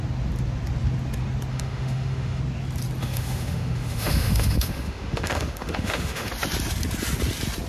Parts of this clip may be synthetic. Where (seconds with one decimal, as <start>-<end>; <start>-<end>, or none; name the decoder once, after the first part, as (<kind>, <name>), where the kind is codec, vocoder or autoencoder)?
1.5-2.4 (autoencoder, DAC-VAE); 3.0-6.3